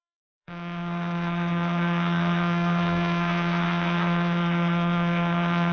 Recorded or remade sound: remade